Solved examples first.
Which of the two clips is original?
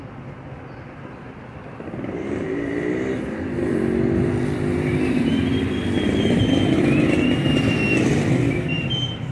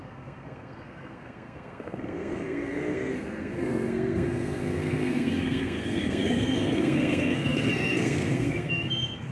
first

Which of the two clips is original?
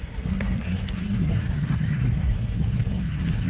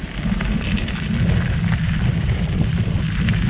second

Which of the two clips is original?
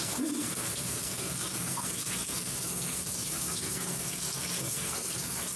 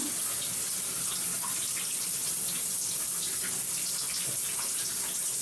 second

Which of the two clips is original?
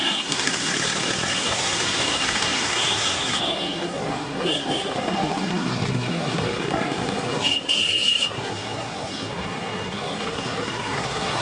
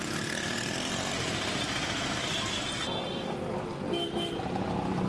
second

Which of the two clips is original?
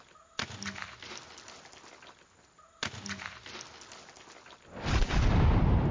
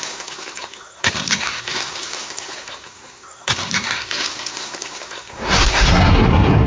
first